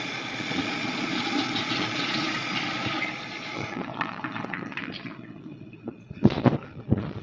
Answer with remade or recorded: remade